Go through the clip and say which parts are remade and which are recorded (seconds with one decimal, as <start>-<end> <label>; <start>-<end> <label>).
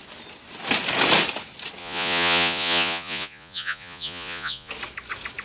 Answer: 0.0-1.8 recorded; 1.8-4.7 remade; 4.7-5.4 recorded